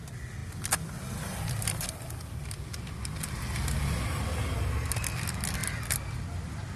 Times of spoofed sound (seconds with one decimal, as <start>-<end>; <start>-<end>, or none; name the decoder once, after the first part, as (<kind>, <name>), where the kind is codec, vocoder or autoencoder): none